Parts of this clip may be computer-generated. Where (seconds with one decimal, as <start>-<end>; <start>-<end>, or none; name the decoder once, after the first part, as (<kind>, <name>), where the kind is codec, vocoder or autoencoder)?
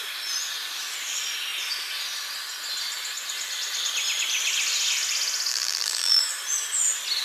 5.5-6.2 (vocoder, BigVGAN v2)